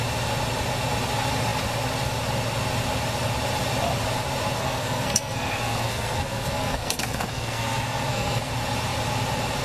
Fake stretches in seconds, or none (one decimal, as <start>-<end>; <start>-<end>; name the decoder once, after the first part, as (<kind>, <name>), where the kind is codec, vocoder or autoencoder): 4.6-8.5 (codec, SNAC)